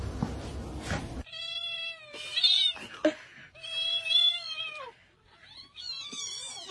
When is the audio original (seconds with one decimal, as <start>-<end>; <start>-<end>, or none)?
0.0-6.7